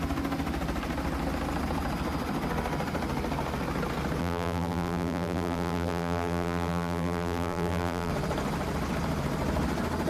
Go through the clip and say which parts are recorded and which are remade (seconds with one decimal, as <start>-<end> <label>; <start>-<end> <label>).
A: 0.0-4.2 recorded; 4.2-8.1 remade; 8.1-10.1 recorded